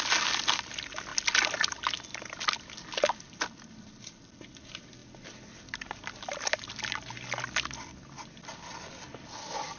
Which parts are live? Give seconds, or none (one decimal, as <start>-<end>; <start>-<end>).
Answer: 0.0-9.8